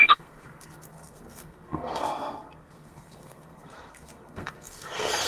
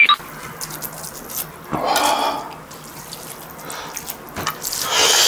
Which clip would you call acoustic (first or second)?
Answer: second